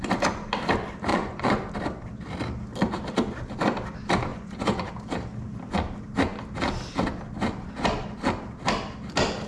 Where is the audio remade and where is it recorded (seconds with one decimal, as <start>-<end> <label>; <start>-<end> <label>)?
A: 0.0-1.1 recorded; 1.1-1.7 remade; 1.7-4.3 recorded; 4.3-4.9 remade; 4.9-9.5 recorded